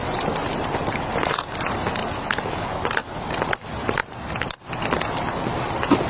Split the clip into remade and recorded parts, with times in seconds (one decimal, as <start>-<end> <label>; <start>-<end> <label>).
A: 0.0-4.0 recorded; 4.0-4.7 remade; 4.7-6.1 recorded